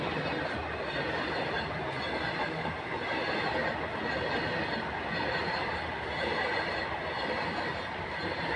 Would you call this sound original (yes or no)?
yes